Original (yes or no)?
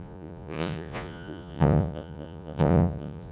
no